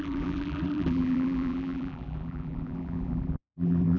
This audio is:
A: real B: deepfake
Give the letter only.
B